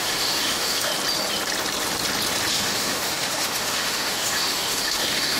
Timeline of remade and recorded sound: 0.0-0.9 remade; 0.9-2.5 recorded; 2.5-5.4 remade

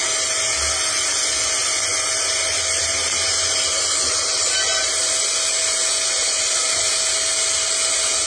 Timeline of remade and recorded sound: 0.0-8.3 recorded

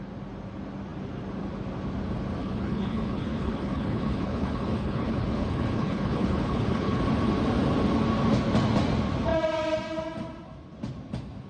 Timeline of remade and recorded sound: 0.0-2.4 recorded; 2.4-7.0 remade; 7.0-11.5 recorded

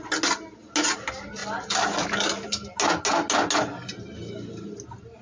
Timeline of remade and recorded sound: 0.0-5.2 recorded

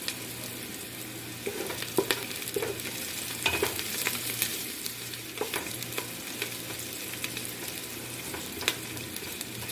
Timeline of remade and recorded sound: 0.0-4.5 recorded; 4.5-5.9 remade; 5.9-8.0 recorded; 8.0-8.6 remade; 8.6-9.7 recorded